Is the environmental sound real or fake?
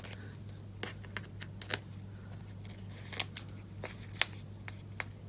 real